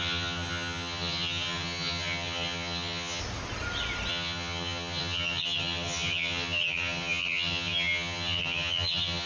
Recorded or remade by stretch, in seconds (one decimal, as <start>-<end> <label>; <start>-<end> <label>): 0.0-3.2 remade; 3.2-4.1 recorded; 4.1-9.3 remade